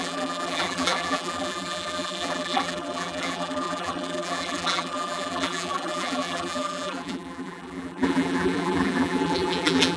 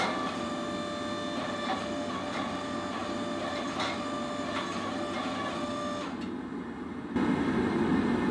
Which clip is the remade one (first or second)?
first